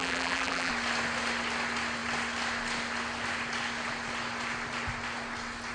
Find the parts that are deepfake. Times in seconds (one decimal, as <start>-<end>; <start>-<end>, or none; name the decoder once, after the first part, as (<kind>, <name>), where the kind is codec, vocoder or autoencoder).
0.0-0.7 (vocoder, BigVGAN v2)